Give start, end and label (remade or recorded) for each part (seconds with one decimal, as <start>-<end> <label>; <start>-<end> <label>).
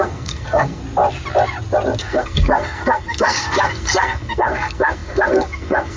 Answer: 0.0-0.8 remade; 0.8-2.0 recorded; 2.0-6.0 remade